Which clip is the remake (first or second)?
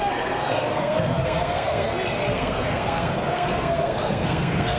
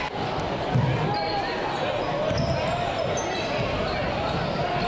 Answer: first